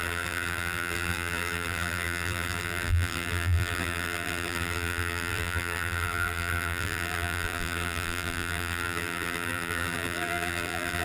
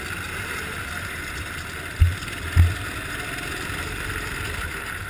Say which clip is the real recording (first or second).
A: second